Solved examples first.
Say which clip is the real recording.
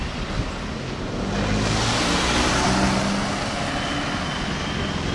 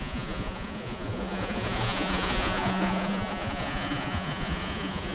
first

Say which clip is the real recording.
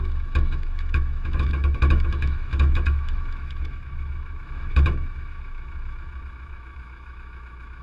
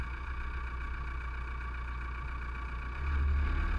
second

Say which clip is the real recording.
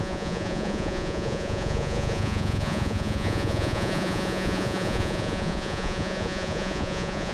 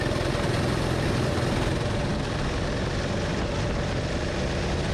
second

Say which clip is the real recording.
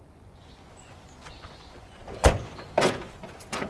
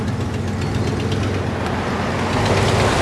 second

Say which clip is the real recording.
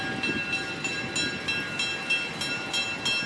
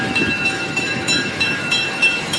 first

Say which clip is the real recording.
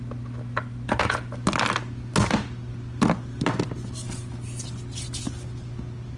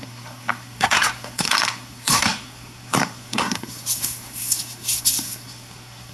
first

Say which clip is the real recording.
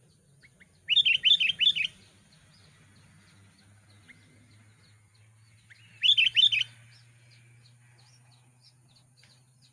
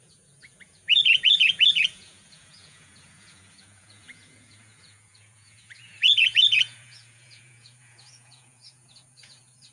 first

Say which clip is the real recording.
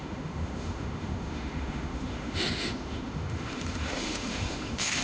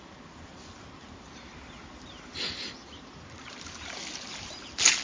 second